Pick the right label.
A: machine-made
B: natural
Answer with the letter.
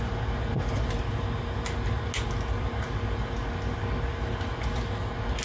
B